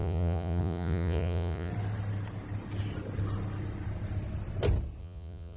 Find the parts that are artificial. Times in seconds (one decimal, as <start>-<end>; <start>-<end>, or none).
0.0-1.7; 5.0-5.6